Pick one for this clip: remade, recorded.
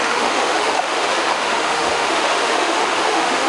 remade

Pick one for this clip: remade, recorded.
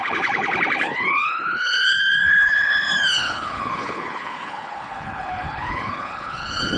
remade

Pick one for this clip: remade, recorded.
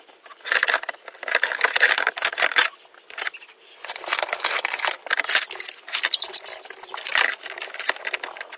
recorded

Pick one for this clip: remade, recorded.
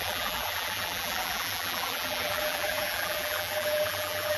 remade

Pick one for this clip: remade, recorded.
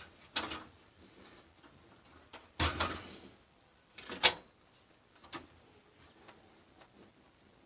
recorded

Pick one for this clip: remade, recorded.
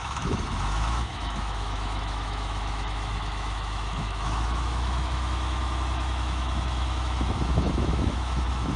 remade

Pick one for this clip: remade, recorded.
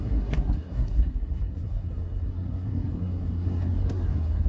remade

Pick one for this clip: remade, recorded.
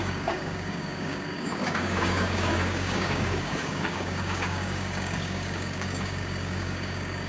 remade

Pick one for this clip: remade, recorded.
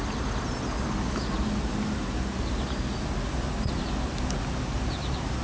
recorded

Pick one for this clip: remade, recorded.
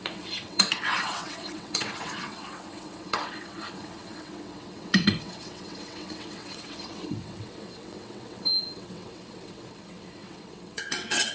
remade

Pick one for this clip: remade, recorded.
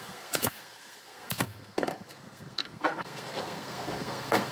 remade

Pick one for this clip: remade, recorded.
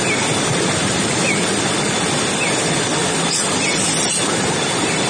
recorded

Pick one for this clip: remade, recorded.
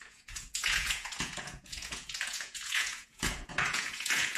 remade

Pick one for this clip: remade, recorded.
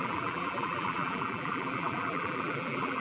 remade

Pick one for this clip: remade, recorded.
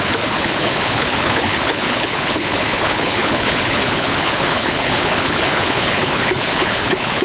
remade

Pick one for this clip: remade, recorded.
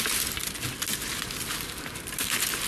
recorded